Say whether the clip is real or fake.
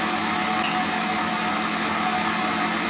real